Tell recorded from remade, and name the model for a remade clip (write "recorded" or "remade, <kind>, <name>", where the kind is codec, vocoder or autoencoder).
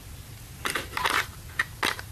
recorded